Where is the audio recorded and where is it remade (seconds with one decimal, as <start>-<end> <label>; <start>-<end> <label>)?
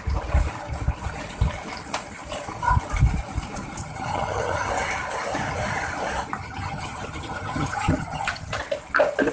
0.0-3.8 recorded; 3.8-4.7 remade; 4.7-6.4 recorded; 6.4-8.6 remade; 8.6-9.3 recorded